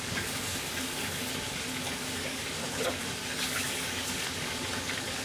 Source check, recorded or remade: remade